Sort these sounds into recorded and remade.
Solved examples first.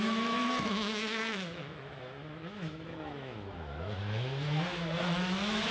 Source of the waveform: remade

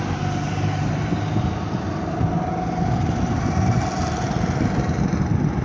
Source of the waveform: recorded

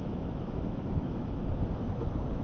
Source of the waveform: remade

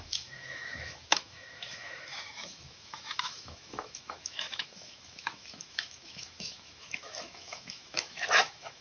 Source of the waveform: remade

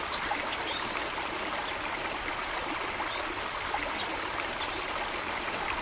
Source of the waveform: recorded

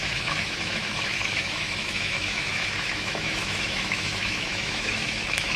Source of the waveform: remade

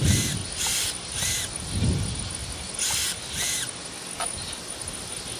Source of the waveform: recorded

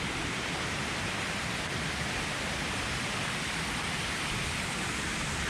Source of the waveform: recorded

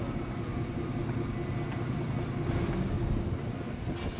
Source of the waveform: recorded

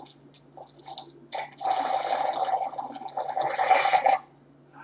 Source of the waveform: recorded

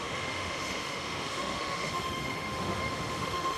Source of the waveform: remade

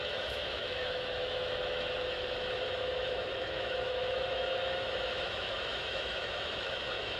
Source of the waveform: remade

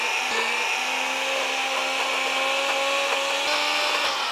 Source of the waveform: recorded